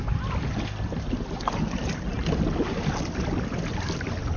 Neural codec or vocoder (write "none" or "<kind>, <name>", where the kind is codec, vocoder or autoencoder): none